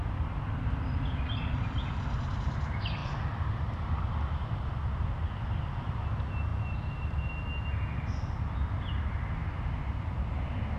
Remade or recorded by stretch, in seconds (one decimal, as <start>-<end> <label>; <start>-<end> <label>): 0.0-10.8 recorded